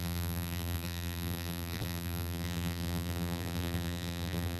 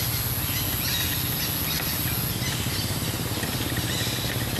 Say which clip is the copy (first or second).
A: first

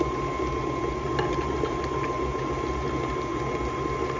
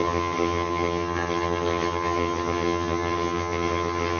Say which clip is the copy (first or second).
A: second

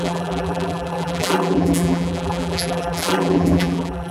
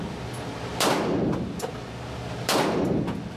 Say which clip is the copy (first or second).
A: first